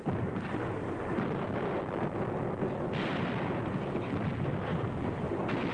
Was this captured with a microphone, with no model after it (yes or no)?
yes